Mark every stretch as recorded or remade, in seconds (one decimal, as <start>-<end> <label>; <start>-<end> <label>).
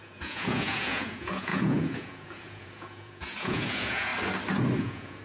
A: 0.0-4.1 remade; 4.1-4.8 recorded; 4.8-5.2 remade